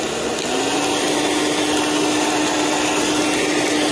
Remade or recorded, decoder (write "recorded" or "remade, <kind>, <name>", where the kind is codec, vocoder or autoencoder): recorded